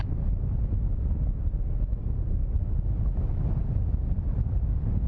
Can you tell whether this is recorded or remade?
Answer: recorded